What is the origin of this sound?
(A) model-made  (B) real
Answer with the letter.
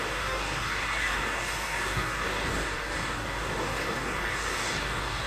A